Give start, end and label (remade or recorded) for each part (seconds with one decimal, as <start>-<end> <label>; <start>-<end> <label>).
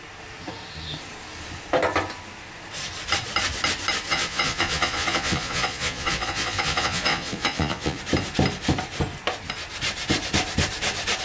0.0-4.1 recorded; 4.1-8.0 remade; 8.0-11.2 recorded